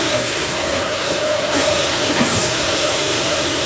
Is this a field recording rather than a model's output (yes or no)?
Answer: no